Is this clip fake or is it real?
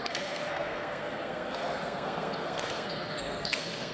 fake